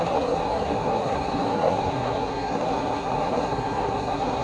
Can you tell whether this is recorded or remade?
remade